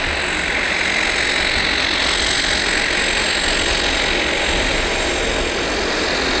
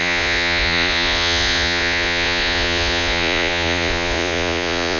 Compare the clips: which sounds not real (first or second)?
second